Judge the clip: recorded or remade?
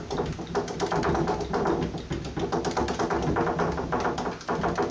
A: recorded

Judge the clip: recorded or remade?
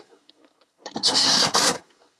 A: remade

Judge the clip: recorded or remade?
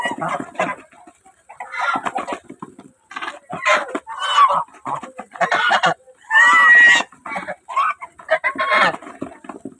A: recorded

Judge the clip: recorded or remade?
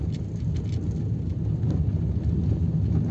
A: recorded